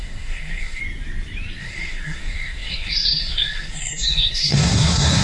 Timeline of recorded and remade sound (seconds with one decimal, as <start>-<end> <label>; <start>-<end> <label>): 0.0-0.8 remade; 0.8-1.6 recorded; 1.6-5.2 remade